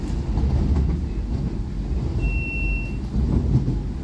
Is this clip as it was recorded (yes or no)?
yes